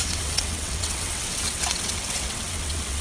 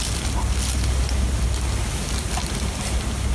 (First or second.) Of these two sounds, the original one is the second